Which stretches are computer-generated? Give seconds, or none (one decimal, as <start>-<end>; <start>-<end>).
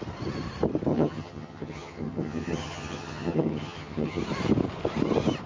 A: 0.9-4.2